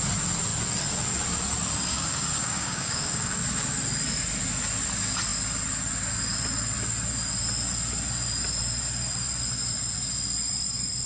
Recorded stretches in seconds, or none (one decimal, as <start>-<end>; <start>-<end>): 0.0-1.9; 3.4-11.1